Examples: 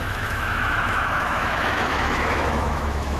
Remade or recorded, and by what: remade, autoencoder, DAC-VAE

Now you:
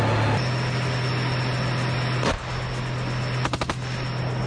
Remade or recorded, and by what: recorded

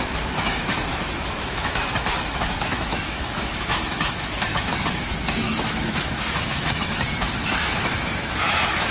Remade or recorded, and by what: remade, autoencoder, DAC-VAE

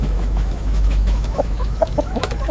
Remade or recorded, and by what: remade, autoencoder, DAC-VAE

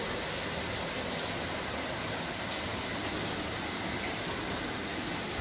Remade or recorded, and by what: recorded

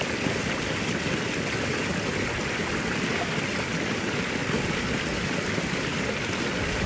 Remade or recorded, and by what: recorded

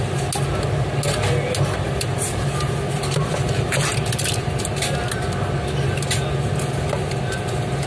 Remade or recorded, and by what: recorded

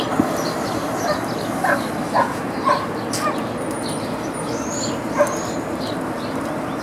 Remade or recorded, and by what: recorded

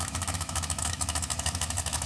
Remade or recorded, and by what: remade, autoencoder, DAC-VAE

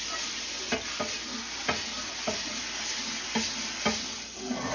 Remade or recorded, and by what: recorded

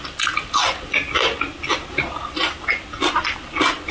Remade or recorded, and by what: recorded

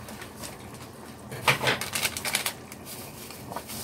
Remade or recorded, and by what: recorded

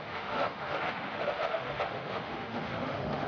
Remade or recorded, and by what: remade, autoencoder, DAC-VAE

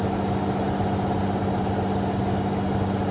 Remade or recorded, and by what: recorded